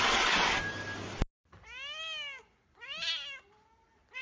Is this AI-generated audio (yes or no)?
no